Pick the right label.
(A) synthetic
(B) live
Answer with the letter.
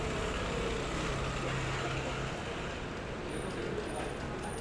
B